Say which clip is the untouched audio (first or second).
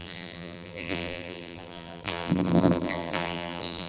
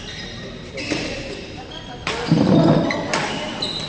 second